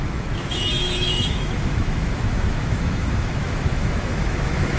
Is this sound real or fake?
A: fake